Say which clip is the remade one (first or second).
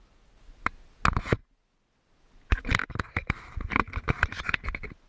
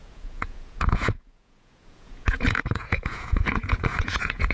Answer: second